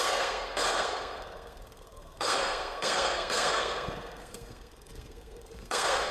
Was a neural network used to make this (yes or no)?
yes